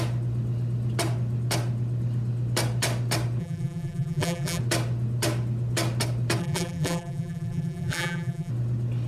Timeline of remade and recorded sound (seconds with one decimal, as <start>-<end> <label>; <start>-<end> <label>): 0.0-3.4 recorded; 3.4-4.6 remade; 4.6-6.4 recorded; 6.4-8.5 remade; 8.5-9.1 recorded